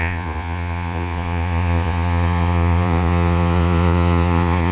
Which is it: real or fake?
fake